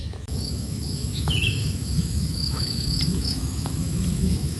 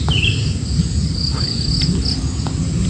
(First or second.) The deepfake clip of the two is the first